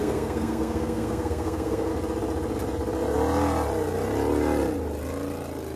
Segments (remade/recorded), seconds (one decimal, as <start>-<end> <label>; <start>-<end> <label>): 0.0-1.9 remade; 1.9-5.8 recorded